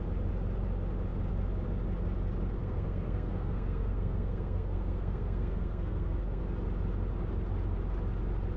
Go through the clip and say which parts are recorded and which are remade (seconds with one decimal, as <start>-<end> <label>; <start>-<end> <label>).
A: 0.0-2.6 recorded; 2.6-6.4 remade; 6.4-8.6 recorded